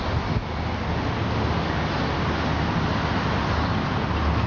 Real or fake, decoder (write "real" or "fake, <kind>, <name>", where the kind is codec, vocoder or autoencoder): real